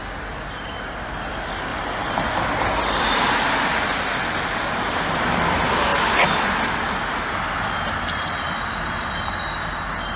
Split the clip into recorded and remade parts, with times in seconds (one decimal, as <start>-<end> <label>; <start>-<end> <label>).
0.0-1.7 recorded; 1.7-2.3 remade; 2.3-10.2 recorded